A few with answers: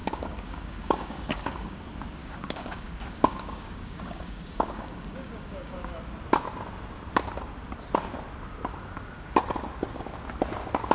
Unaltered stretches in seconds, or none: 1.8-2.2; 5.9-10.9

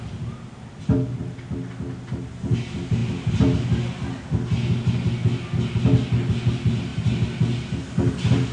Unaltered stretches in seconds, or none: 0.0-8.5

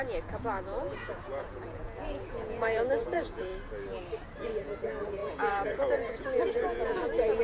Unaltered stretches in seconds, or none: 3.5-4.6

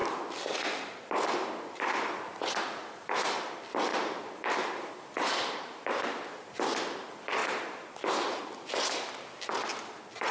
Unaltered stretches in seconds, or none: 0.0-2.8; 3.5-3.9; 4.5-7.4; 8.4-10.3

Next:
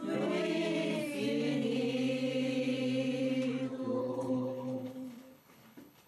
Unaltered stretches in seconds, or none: 0.0-4.0